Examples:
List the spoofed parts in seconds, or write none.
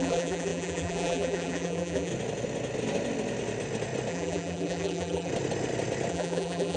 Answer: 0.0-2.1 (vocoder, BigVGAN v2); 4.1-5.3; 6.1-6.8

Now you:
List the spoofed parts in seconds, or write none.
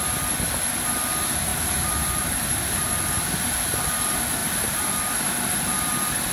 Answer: 4.4-4.9 (vocoder, BigVGAN v2)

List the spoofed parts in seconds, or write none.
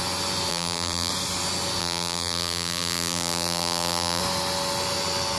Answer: 0.5-1.1 (vocoder, BigVGAN v2); 1.8-4.2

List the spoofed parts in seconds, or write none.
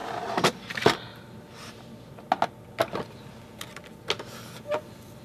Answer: 0.0-0.5 (vocoder, BigVGAN v2); 1.1-1.8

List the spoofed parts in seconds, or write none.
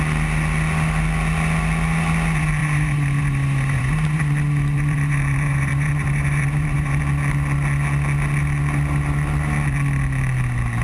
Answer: 2.6-7.0 (vocoder, BigVGAN v2)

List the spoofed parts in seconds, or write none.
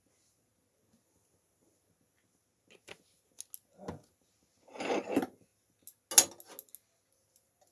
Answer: none